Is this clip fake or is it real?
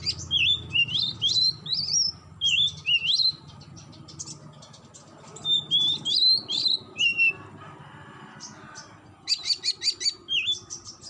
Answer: real